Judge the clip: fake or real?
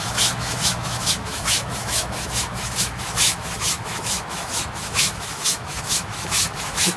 fake